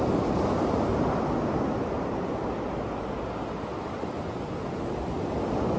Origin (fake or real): real